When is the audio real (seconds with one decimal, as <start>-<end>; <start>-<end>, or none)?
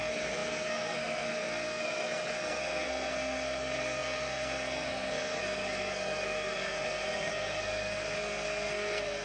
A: none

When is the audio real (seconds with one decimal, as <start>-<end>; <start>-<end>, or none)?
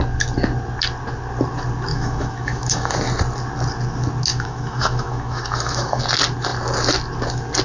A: 0.0-1.9; 2.9-4.3; 6.0-7.6